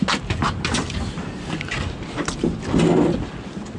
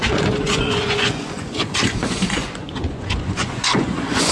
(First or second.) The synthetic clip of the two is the second